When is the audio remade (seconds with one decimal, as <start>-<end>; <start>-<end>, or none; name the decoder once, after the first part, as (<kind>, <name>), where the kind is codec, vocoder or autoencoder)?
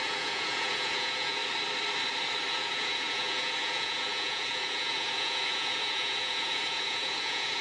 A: 0.0-1.4 (vocoder, Vocos); 2.5-7.6